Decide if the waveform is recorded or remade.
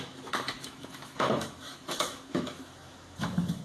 remade